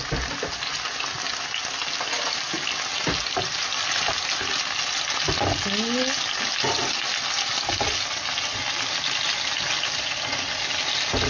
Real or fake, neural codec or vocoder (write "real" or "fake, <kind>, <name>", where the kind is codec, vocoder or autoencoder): real